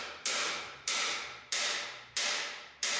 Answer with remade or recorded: remade